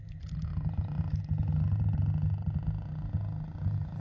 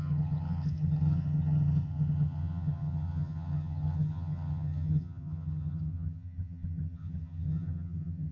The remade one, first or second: second